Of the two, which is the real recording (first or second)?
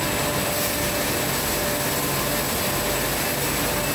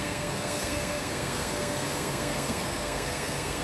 first